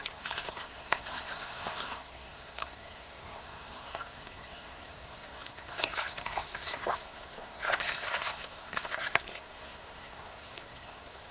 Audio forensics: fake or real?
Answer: fake